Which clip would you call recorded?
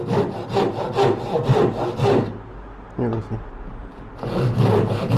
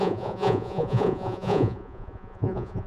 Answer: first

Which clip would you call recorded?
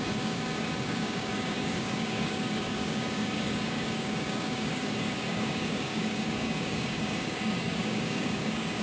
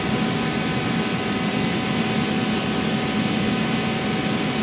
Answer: second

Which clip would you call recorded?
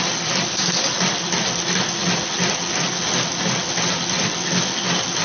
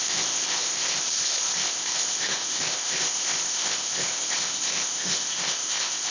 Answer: first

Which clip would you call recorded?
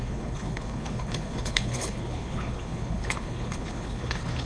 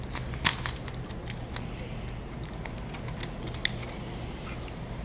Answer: second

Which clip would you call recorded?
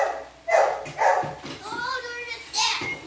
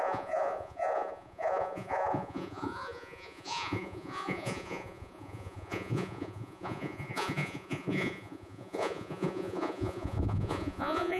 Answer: first